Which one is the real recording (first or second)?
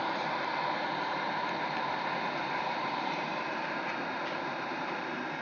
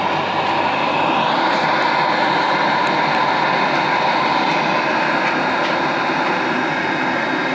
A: second